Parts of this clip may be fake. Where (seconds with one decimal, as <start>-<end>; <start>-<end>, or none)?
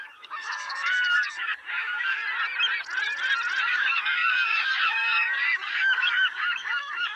0.0-2.2; 3.6-7.2